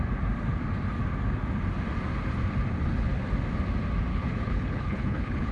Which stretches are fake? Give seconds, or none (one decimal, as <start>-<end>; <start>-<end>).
4.1-5.5